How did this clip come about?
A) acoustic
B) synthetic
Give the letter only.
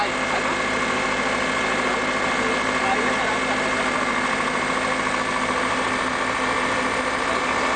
A